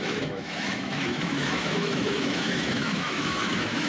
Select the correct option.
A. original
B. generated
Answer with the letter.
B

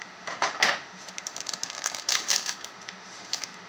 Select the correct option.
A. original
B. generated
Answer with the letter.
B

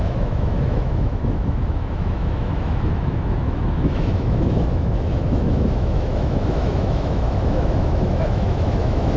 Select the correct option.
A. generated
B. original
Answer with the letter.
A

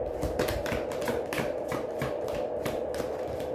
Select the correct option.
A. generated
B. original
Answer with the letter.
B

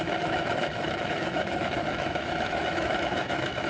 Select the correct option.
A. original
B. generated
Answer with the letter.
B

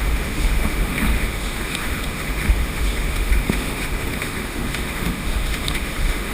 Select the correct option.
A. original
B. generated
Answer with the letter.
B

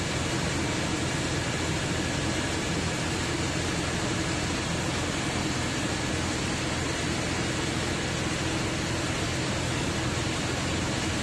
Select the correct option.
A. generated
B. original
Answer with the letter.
B